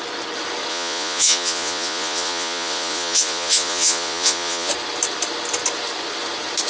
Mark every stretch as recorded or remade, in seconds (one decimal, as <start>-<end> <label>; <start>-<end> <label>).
0.0-0.7 recorded; 0.7-4.7 remade; 4.7-6.7 recorded